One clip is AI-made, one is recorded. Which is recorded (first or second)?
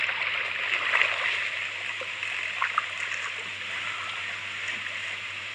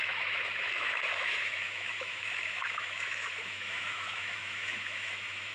first